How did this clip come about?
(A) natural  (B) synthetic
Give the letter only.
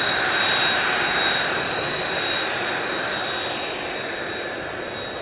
A